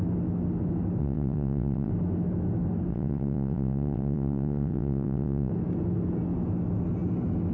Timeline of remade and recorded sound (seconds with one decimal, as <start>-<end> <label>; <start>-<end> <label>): 0.0-1.0 recorded; 1.0-1.9 remade; 1.9-2.9 recorded; 2.9-5.5 remade; 5.5-7.5 recorded